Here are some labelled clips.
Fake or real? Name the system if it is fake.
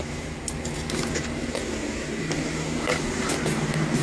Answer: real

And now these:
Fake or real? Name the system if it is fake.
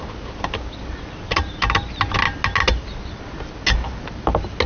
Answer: real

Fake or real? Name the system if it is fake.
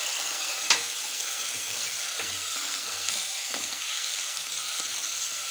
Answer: fake, codec, SNAC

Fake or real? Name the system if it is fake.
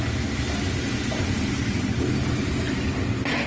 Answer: real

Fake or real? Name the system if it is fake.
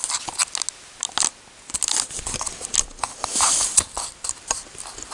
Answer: real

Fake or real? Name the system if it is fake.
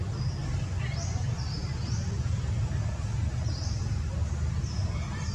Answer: real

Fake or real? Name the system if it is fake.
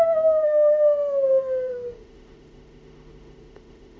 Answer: fake, autoencoder, DAC-VAE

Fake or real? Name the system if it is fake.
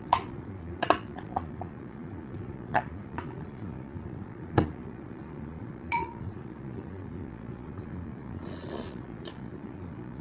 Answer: fake, vocoder, Vocos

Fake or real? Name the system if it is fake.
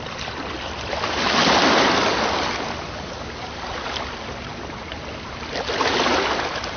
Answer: real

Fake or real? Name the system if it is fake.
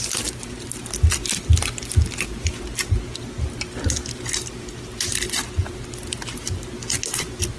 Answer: real